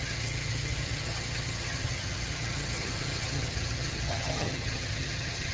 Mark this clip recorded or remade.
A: remade